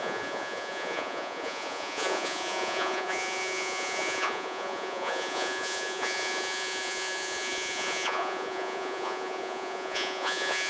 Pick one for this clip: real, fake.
fake